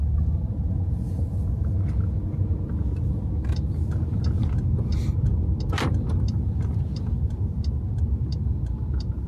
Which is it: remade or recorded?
recorded